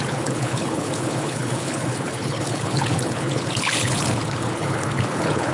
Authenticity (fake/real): fake